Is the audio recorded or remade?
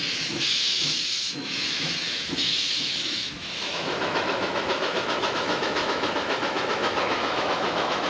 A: remade